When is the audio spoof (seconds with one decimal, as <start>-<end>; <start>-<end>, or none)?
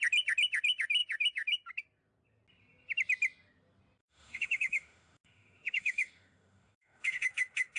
4.0-7.8